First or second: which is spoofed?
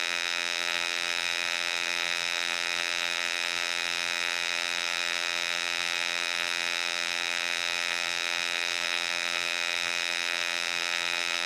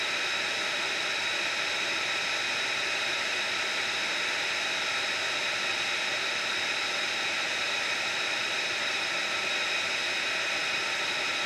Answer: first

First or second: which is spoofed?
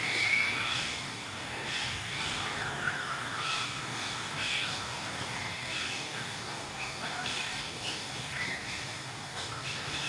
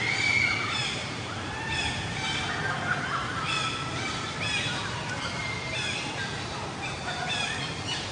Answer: first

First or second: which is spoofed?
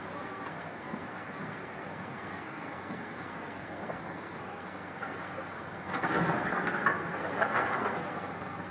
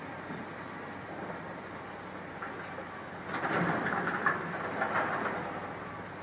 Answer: first